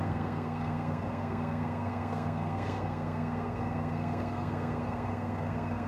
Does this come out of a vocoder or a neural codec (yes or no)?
yes